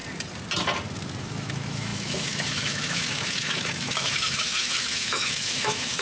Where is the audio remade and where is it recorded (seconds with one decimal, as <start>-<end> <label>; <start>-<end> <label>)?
0.0-1.2 recorded; 1.2-6.0 remade